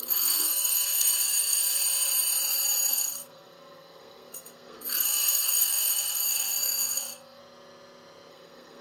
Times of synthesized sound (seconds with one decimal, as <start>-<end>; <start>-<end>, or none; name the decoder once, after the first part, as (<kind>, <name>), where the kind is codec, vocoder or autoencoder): 0.0-1.6 (codec, SNAC); 2.9-7.4; 8.3-8.8